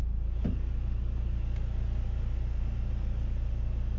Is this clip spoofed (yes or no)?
no